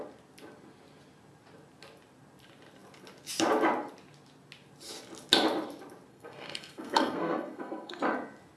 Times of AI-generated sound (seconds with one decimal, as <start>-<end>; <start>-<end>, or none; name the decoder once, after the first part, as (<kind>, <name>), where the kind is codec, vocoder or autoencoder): 6.1-8.0 (codec, SNAC)

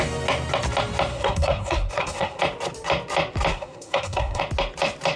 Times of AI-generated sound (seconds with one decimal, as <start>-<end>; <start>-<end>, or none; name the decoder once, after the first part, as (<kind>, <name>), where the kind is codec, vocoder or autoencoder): 1.1-2.4 (codec, SNAC); 3.5-4.4

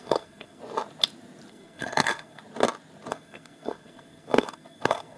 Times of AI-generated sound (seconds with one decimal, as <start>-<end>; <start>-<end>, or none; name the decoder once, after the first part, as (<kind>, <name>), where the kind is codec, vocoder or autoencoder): 0.0-0.6 (codec, SNAC); 1.5-2.4; 3.1-5.2

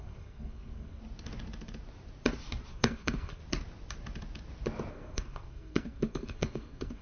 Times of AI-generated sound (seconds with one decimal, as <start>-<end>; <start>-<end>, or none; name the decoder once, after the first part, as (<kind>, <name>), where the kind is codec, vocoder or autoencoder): 0.0-1.0 (codec, SNAC); 2.7-3.4; 4.9-7.0

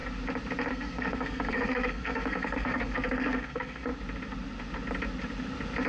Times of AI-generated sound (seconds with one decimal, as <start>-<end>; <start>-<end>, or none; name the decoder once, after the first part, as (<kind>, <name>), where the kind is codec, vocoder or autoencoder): 0.7-3.9 (codec, SNAC)

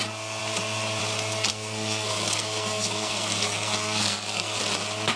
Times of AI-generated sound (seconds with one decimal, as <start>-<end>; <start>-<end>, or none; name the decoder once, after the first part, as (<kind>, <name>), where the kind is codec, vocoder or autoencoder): 1.5-4.6 (codec, SNAC)

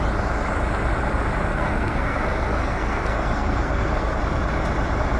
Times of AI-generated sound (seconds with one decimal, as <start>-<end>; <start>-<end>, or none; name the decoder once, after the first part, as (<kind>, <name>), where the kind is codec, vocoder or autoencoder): 1.5-4.2 (codec, SNAC)